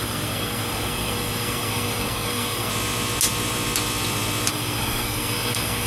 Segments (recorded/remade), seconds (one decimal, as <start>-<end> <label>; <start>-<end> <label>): 0.0-2.7 remade; 2.7-4.5 recorded; 4.5-5.9 remade